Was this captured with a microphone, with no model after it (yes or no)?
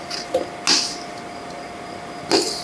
yes